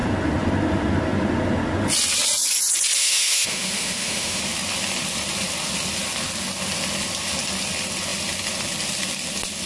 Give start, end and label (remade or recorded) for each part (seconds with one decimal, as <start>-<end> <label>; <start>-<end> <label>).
0.0-3.0 recorded; 3.0-4.4 remade; 4.4-9.7 recorded